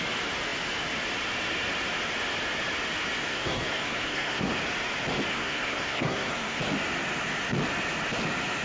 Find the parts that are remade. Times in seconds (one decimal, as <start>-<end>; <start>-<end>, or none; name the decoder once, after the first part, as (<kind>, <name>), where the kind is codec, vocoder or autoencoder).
3.2-4.6 (codec, SNAC); 5.3-6.6

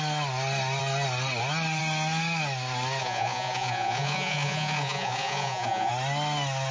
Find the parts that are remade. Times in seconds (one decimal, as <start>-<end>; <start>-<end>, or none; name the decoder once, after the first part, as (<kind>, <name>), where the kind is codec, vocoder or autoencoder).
3.0-5.9 (vocoder, Vocos)

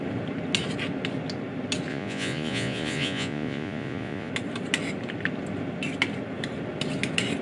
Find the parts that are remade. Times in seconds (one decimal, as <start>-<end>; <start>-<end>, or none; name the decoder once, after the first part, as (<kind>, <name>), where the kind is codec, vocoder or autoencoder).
1.9-4.3 (vocoder, Vocos)

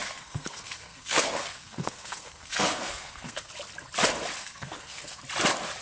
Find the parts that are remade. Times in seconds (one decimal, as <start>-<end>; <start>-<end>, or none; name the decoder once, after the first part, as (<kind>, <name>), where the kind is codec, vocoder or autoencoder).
0.0-3.5 (codec, SNAC); 4.4-5.2

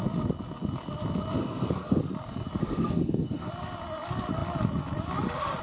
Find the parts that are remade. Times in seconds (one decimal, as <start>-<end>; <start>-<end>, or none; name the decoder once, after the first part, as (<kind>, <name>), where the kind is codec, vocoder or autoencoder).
1.4-2.0 (codec, SNAC); 2.6-3.5

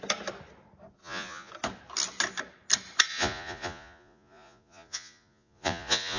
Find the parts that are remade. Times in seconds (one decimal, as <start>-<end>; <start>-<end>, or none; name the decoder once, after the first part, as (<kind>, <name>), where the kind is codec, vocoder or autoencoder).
1.0-1.5 (vocoder, Vocos); 3.1-6.2